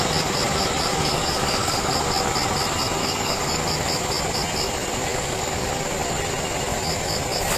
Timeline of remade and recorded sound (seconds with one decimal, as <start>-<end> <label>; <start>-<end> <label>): 0.0-0.9 recorded; 0.9-1.9 remade; 1.9-3.0 recorded; 3.0-3.6 remade; 3.6-5.1 recorded; 5.1-5.8 remade; 5.8-7.6 recorded